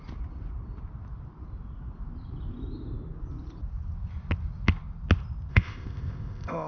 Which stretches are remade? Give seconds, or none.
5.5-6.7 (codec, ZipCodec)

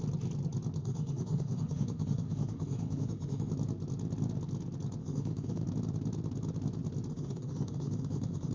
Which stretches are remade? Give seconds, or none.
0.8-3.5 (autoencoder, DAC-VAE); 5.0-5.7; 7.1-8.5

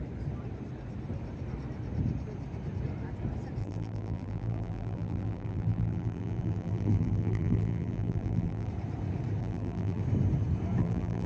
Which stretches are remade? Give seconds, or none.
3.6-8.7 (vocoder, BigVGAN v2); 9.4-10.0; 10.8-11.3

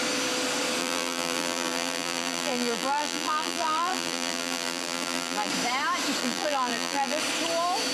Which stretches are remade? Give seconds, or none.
0.8-5.5 (vocoder, BigVGAN v2); 6.2-7.2

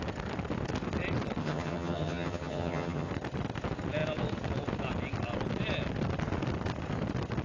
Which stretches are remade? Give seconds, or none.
1.4-3.1 (vocoder, HiFi-GAN)

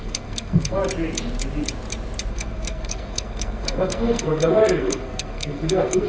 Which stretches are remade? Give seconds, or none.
0.0-0.8 (codec, SNAC); 2.3-6.1

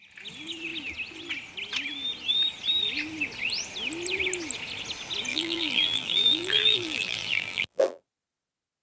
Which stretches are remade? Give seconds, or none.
5.3-8.0 (vocoder, BigVGAN v2)

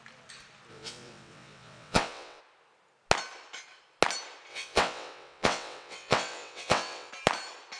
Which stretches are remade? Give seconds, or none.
0.7-2.4 (vocoder, WaveNeXt); 4.5-7.1